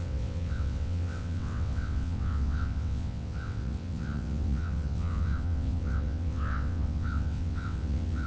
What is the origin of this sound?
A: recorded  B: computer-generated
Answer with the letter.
B